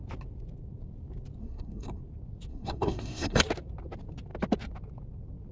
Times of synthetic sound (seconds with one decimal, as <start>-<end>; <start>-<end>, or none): 1.4-2.0; 2.5-3.4